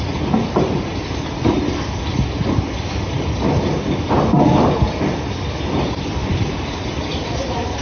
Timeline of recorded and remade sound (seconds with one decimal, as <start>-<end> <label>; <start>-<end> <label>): 0.0-6.2 recorded; 6.2-7.8 remade